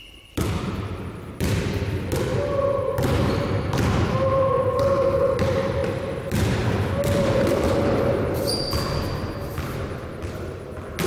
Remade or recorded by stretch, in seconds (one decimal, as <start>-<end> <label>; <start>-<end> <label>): 0.0-5.8 remade; 5.8-10.0 recorded; 10.0-11.1 remade